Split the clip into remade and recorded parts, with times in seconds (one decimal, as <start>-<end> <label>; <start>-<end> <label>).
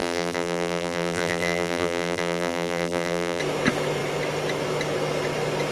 0.0-3.4 remade; 3.4-5.7 recorded